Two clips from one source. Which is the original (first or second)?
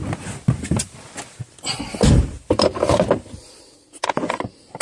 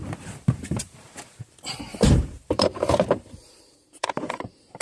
first